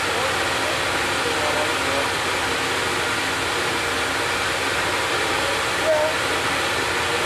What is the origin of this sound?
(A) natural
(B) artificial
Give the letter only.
A